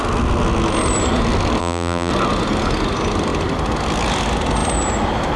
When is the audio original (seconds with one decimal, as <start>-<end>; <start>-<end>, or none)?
0.0-1.6; 2.1-5.4